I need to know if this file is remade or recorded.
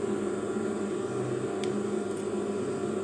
recorded